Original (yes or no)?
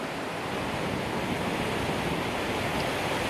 yes